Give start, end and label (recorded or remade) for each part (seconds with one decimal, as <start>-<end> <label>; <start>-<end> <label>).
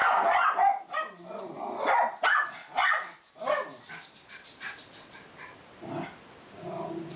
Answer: 0.0-7.2 recorded